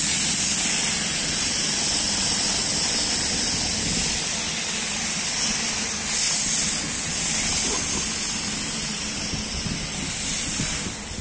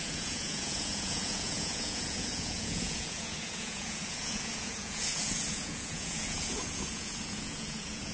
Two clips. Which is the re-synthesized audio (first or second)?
second